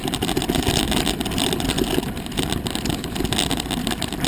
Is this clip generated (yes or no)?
no